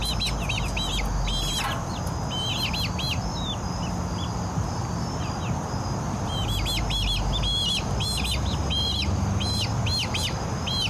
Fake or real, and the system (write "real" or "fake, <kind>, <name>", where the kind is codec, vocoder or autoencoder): real